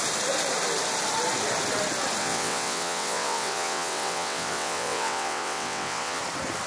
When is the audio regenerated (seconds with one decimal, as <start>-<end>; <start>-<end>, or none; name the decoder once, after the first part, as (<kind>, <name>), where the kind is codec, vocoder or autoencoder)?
2.2-6.2 (vocoder, WaveNeXt)